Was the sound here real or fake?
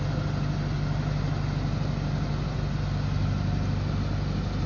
real